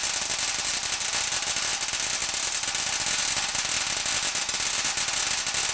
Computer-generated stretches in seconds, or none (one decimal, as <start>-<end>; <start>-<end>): none